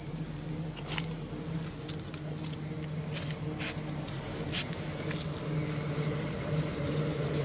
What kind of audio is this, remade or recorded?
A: recorded